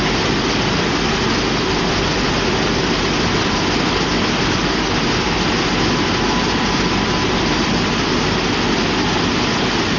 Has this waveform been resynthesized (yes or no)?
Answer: no